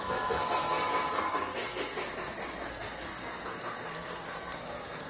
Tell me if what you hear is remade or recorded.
remade